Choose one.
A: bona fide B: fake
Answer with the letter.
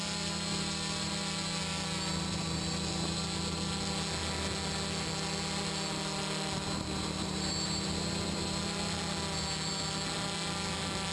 A